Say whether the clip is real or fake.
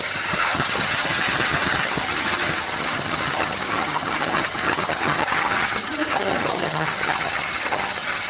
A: fake